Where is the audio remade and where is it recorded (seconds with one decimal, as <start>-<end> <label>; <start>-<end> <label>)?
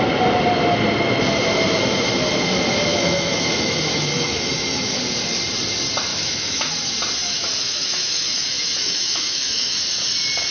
0.0-2.9 recorded; 2.9-5.0 remade; 5.0-6.1 recorded; 6.1-6.7 remade; 6.7-7.2 recorded; 7.2-9.8 remade; 9.8-10.5 recorded